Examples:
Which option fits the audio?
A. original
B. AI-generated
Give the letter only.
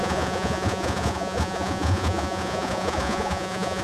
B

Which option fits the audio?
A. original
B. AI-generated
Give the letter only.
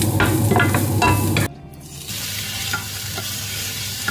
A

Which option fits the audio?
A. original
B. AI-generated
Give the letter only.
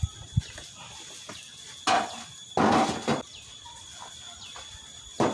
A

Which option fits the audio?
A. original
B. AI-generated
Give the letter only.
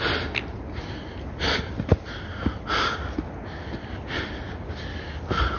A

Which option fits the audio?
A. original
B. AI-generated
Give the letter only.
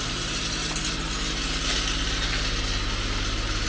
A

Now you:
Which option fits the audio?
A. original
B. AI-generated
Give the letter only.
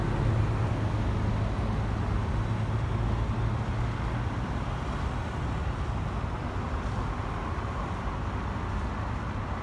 A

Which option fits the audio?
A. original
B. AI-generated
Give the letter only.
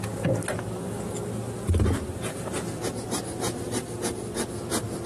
A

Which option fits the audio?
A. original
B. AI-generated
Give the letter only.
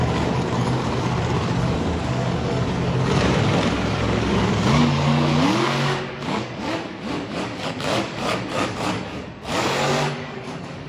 B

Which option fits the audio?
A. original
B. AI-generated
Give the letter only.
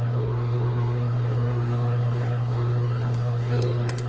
B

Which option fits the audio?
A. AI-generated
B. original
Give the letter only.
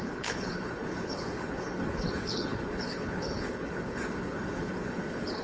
A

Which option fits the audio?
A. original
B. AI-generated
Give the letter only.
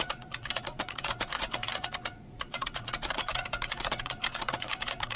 B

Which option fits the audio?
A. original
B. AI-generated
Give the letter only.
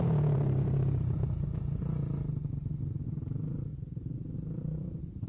B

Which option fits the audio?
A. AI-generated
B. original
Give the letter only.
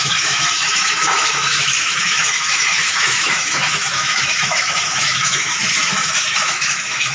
A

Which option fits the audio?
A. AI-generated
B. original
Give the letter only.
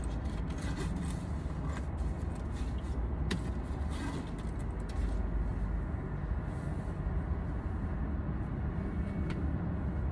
B